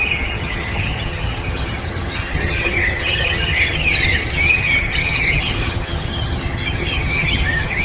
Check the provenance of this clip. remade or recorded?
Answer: remade